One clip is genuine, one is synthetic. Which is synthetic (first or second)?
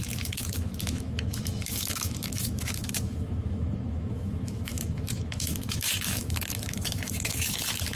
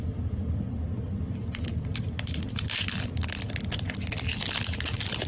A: first